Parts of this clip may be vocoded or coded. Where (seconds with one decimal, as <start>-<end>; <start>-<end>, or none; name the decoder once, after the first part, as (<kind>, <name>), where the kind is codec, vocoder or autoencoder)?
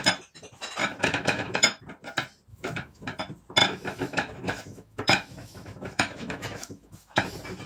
0.8-1.8 (autoencoder, DAC-VAE); 2.5-3.2; 3.6-7.2